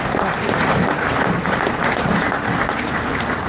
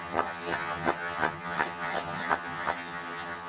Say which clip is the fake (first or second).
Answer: second